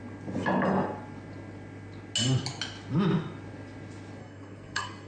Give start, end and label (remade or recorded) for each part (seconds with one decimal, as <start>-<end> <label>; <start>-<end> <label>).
0.0-4.2 recorded; 4.2-5.1 remade